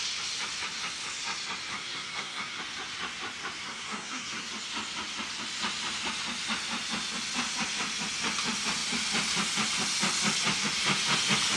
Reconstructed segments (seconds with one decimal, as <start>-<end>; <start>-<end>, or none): 1.7-2.6; 3.6-4.5